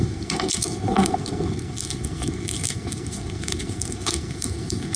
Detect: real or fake fake